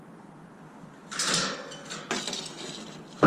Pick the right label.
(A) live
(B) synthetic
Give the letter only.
A